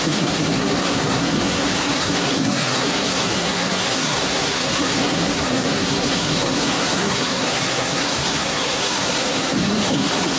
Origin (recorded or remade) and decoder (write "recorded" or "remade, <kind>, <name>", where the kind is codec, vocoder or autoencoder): remade, codec, SNAC